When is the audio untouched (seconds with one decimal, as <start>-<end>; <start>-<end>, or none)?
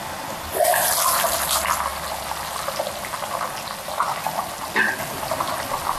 0.0-6.0